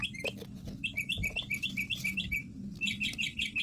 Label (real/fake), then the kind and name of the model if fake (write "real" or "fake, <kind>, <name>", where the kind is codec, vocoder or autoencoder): real